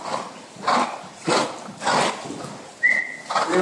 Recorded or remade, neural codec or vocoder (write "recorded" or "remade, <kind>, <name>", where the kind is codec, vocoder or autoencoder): remade, vocoder, BigVGAN v2